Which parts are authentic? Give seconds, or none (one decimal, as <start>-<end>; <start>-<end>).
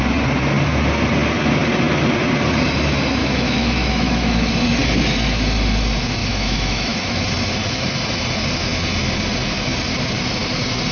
0.0-3.2; 4.5-6.2; 7.2-10.9